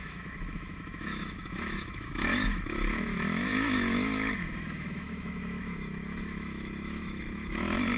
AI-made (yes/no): yes